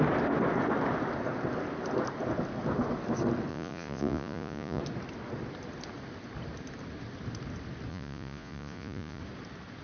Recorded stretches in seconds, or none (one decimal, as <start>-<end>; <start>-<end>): 0.0-3.5; 4.8-7.9; 9.2-9.8